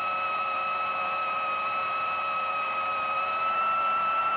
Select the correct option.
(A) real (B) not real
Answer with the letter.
B